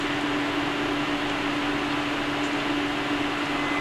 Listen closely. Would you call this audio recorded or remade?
recorded